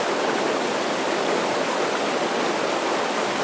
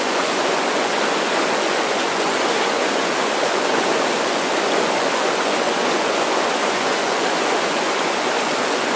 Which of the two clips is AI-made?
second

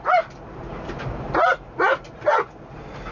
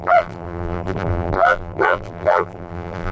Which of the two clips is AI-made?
second